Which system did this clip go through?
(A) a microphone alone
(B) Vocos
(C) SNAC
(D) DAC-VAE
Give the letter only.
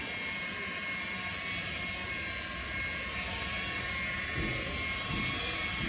A